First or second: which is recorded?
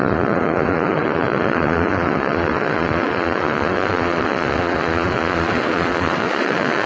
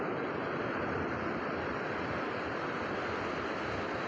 second